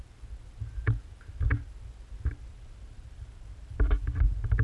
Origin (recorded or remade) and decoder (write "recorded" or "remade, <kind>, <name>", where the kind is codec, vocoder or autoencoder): recorded